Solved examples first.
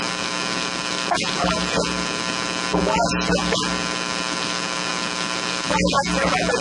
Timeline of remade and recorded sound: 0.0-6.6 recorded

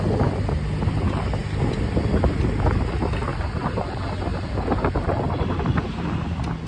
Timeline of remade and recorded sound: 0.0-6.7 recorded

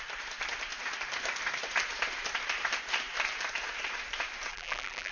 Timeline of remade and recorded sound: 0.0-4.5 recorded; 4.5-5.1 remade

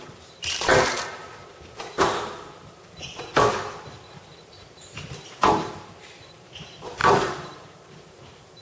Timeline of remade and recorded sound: 0.0-0.7 remade; 0.7-3.8 recorded; 3.8-8.6 remade

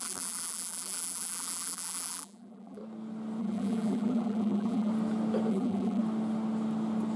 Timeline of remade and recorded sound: 0.0-2.8 remade; 2.8-3.4 recorded; 3.4-4.9 remade; 4.9-5.5 recorded; 5.5-6.0 remade; 6.0-7.2 recorded

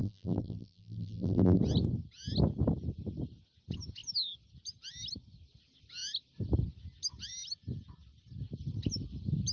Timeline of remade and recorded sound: 0.0-1.6 remade; 1.6-9.5 recorded